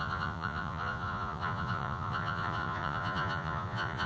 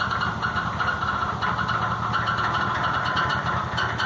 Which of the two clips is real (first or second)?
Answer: second